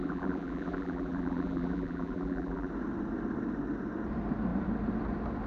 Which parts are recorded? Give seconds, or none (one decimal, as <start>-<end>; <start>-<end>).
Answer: 2.7-5.5